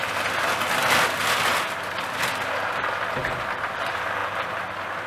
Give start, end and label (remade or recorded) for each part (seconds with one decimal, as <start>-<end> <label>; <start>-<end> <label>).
0.0-5.1 recorded